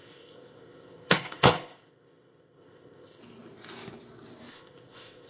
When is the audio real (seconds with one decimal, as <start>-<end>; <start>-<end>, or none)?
3.2-4.5